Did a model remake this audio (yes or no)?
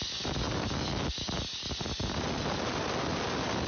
no